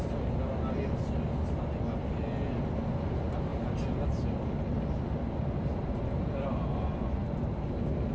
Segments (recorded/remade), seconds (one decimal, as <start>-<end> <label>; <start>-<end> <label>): 0.0-8.1 recorded